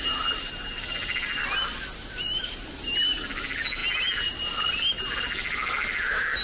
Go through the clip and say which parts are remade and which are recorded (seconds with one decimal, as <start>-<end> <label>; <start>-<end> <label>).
0.0-6.4 recorded